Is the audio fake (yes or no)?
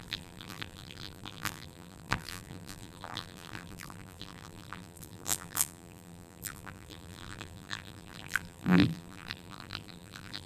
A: yes